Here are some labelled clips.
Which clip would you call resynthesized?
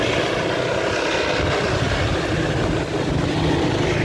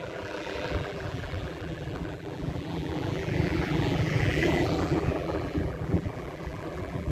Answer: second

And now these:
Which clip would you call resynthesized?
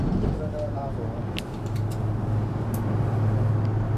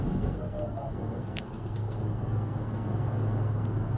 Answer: second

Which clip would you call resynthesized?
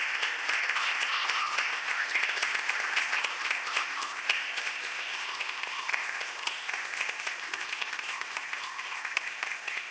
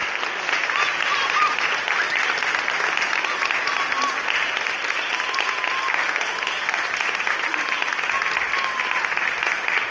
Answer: first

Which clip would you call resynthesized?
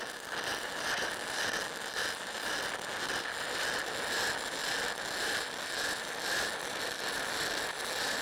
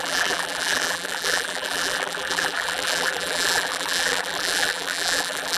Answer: second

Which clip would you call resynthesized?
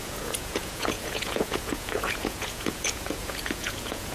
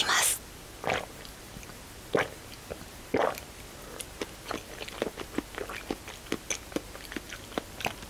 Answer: first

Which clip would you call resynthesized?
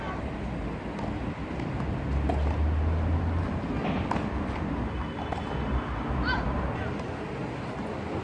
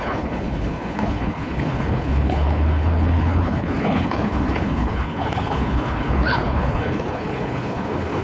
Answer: second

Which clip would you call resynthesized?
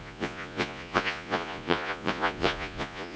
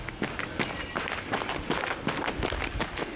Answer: first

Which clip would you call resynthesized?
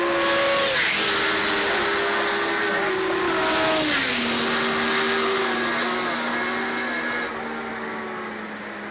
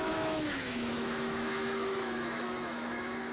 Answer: second